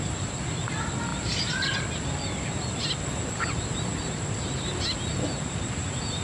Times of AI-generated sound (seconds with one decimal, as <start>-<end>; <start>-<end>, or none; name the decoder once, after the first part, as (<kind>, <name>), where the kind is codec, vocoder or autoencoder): none